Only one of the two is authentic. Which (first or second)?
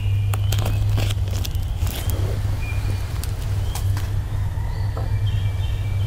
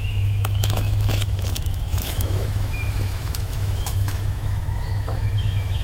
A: first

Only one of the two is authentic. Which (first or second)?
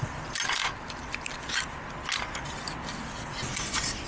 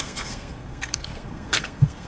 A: first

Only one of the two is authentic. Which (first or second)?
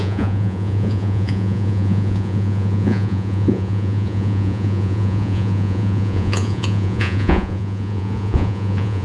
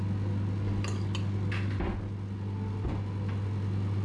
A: second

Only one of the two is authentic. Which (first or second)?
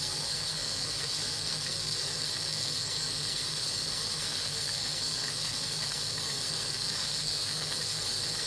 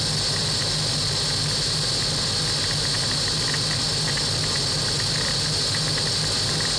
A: second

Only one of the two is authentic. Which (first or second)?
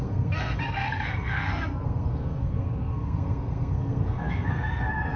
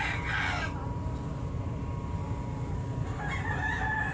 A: second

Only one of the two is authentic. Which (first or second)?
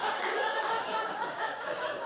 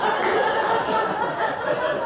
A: second